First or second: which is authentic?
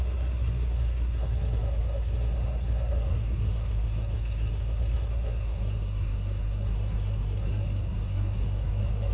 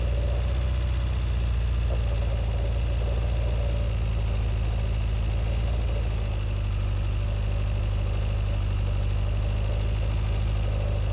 second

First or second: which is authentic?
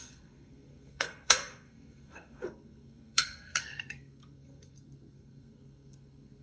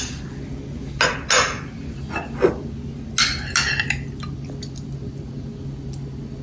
second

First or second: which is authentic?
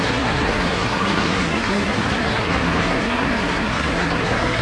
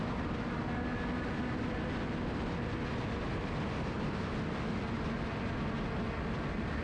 second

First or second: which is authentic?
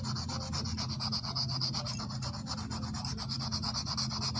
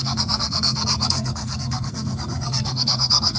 first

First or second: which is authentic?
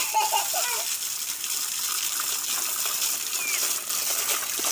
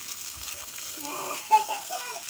first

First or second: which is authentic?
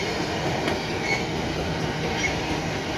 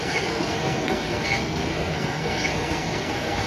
first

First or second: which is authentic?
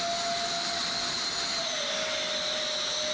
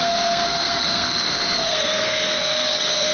first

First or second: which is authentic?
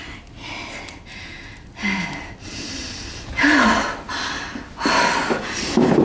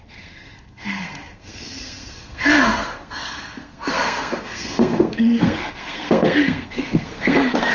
first